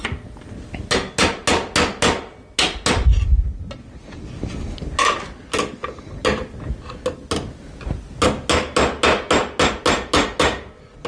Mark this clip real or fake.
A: real